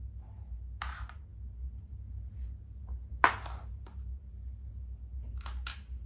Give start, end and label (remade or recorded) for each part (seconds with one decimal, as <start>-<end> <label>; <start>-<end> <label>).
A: 0.0-6.1 recorded